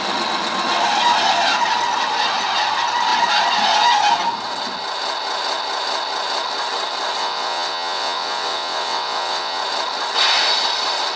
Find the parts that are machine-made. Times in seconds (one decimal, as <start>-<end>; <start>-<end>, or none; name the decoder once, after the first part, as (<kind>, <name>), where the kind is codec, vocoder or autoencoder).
7.2-9.6 (vocoder, WaveNeXt)